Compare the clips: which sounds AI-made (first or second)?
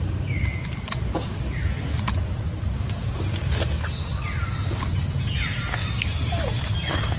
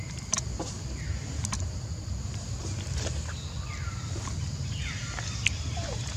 second